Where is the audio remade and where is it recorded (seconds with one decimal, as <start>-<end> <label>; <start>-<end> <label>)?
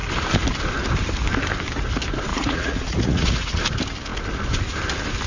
0.0-2.3 recorded; 2.3-3.6 remade; 3.6-5.3 recorded